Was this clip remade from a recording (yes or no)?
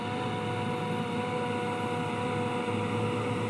no